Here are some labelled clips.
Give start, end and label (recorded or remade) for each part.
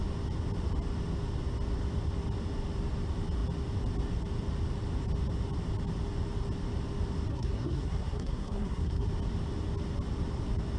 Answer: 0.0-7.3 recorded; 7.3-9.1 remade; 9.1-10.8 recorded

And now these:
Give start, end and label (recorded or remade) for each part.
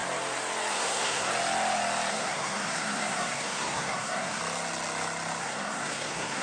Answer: 0.0-0.7 recorded; 0.7-1.3 remade; 1.3-2.1 recorded; 2.1-4.4 remade; 4.4-5.4 recorded; 5.4-6.4 remade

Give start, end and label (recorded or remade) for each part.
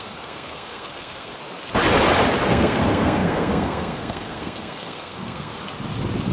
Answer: 0.0-1.3 remade; 1.3-2.5 recorded; 2.5-5.5 remade; 5.5-6.3 recorded